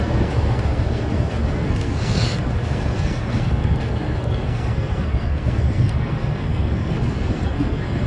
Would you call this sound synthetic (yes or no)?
yes